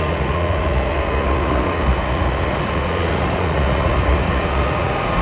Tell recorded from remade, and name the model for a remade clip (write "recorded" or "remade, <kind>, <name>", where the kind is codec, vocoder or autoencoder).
remade, vocoder, Vocos